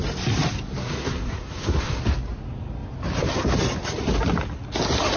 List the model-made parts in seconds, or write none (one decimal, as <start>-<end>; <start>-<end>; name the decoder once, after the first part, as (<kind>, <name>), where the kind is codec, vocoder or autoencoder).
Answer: 0.8-2.0 (codec, SNAC)